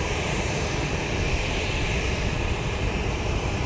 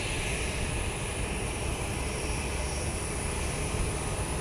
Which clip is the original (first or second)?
second